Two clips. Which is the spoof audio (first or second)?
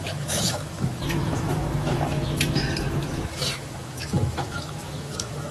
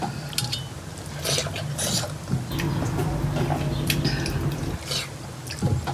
first